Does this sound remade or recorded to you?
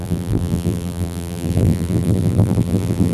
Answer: remade